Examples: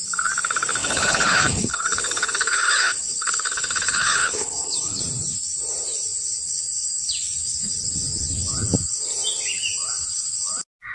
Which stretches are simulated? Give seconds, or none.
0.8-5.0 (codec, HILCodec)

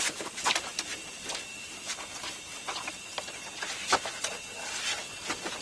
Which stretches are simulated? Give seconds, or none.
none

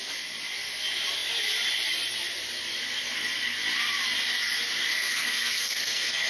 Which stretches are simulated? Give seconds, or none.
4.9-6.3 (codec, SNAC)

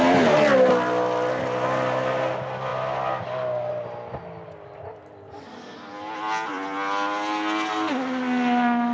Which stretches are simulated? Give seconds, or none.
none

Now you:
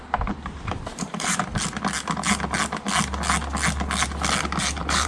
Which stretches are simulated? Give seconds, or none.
0.0-1.5 (vocoder, BigVGAN v2); 4.6-5.1

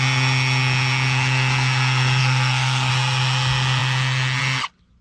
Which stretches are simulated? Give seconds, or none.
2.2-2.9 (codec, SNAC)

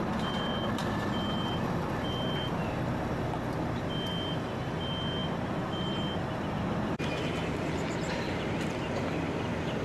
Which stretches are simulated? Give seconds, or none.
none

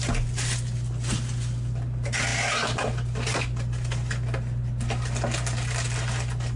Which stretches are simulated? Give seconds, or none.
none